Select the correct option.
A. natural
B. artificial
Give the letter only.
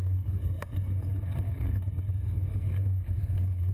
B